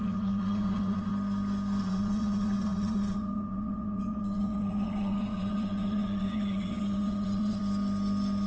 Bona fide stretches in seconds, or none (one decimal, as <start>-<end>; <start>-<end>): 1.1-1.8; 7.6-8.5